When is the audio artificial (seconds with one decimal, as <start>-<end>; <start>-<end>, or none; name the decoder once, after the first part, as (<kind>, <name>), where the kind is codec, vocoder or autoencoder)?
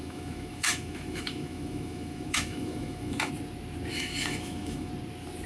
0.0-3.3 (autoencoder, DAC-VAE); 3.9-4.9